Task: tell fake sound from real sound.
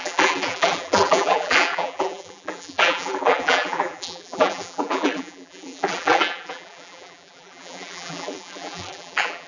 fake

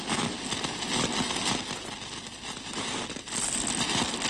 real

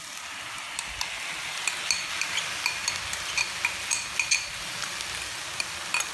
real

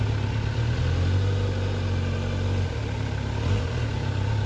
real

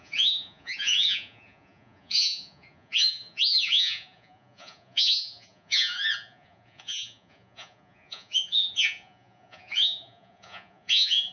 fake